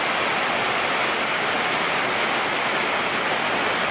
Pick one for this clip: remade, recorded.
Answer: recorded